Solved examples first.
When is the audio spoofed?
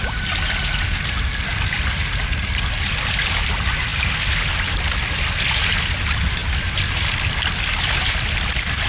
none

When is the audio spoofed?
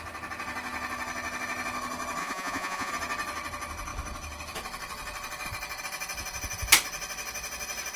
2.2-2.9 (vocoder, Vocos)